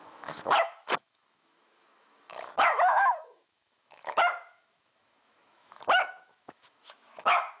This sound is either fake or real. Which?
fake